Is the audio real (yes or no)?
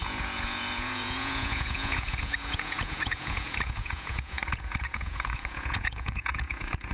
no